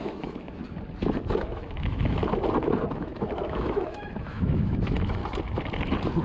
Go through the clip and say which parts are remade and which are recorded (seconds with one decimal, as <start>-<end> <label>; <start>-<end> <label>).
0.0-0.6 remade; 0.6-1.3 recorded; 1.3-2.2 remade; 2.2-2.9 recorded; 2.9-5.2 remade; 5.2-6.2 recorded